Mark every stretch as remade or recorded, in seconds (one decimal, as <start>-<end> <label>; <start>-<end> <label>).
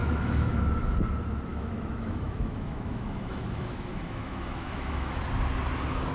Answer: 0.0-0.6 remade; 0.6-1.5 recorded; 1.5-5.2 remade; 5.2-6.1 recorded